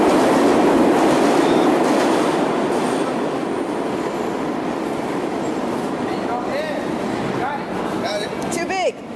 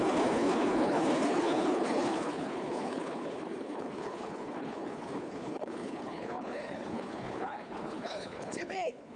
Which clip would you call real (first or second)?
first